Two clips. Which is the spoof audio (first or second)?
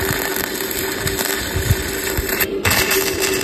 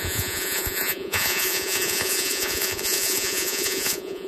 second